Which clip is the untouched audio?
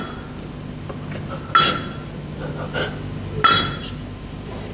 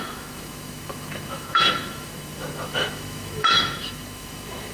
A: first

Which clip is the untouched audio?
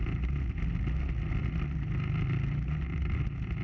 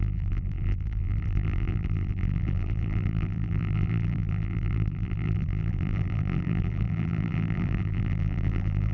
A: first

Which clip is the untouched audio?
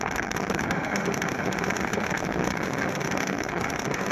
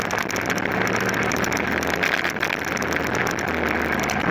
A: second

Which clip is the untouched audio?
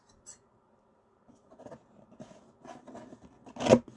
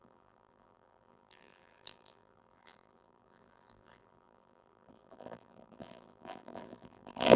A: first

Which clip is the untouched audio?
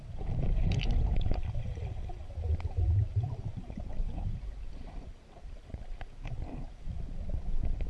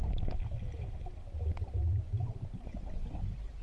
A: second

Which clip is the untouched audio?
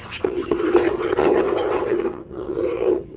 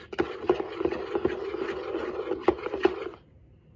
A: second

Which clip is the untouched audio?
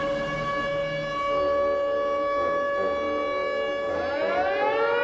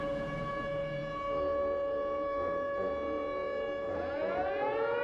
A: first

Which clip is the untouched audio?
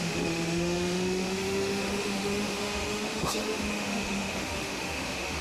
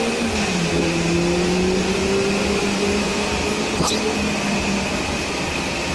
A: second